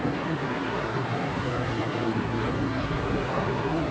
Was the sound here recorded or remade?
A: remade